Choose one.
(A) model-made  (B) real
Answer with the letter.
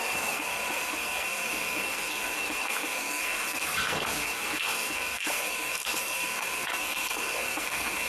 A